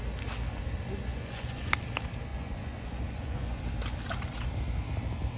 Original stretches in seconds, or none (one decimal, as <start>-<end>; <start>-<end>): 0.0-1.1; 1.7-2.3; 3.6-5.4